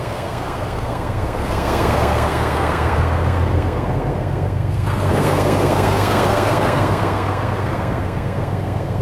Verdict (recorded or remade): remade